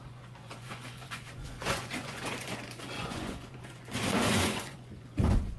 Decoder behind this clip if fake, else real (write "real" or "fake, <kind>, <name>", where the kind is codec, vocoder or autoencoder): fake, vocoder, Vocos